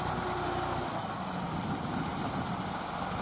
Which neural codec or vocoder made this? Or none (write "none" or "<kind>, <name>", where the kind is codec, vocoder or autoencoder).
none